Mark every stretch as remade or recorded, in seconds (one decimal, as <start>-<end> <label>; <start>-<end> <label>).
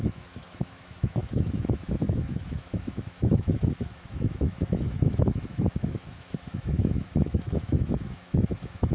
0.0-8.9 remade